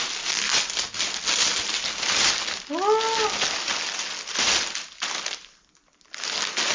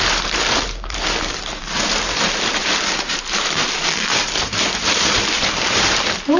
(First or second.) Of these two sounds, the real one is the first